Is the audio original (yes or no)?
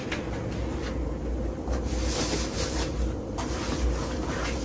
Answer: yes